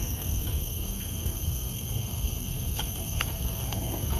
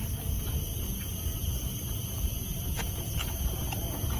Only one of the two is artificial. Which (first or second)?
first